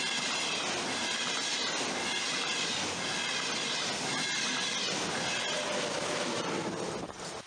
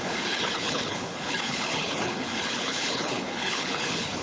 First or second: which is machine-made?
second